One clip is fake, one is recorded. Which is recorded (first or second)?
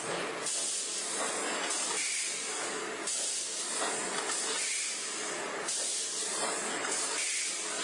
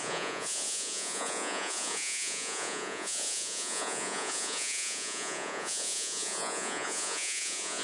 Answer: first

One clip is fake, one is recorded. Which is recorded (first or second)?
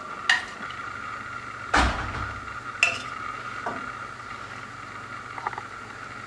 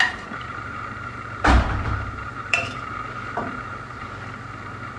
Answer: first